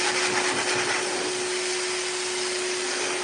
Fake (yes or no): no